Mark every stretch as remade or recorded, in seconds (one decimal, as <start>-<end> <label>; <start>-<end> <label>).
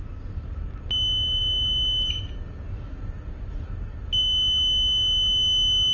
0.0-5.9 recorded